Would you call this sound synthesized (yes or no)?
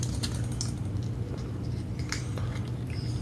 no